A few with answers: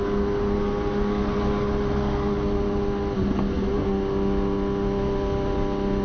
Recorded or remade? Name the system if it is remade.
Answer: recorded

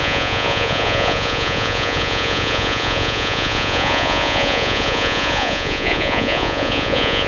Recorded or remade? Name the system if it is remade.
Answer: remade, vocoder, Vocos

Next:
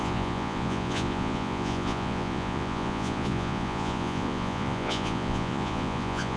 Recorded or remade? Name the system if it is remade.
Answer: remade, vocoder, Vocos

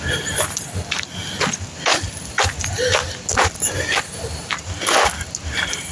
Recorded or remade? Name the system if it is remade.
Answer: recorded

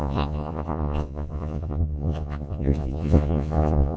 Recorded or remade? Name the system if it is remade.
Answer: remade, vocoder, Vocos